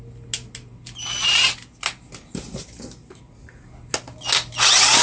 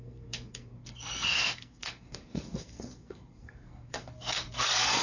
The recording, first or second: first